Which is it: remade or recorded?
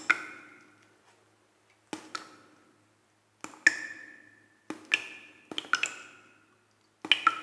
recorded